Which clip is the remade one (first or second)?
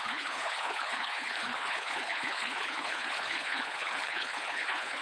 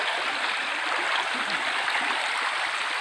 first